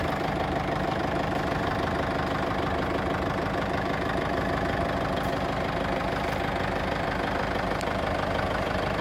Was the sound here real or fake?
fake